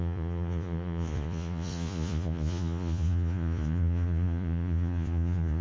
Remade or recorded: remade